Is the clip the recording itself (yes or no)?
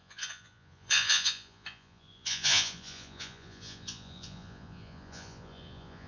no